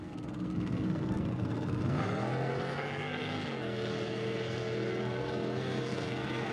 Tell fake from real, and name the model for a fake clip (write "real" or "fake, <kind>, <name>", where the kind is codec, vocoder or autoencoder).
fake, codec, SNAC